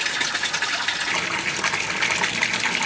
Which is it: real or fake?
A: real